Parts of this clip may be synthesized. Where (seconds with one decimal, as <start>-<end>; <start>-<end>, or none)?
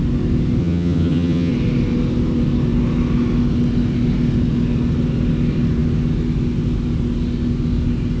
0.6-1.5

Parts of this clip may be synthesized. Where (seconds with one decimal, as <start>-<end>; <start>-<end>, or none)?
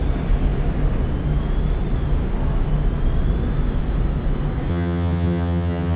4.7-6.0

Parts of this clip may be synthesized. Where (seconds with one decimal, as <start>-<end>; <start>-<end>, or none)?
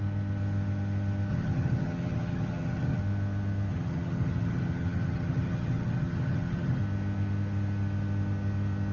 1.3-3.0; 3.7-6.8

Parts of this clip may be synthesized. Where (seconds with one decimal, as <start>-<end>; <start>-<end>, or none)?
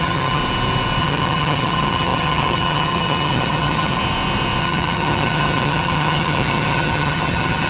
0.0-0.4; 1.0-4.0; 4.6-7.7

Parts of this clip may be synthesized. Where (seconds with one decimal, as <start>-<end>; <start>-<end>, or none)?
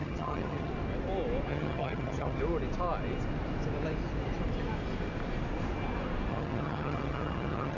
0.0-0.7; 1.5-2.4; 6.3-7.8